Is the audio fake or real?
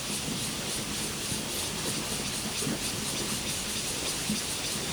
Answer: real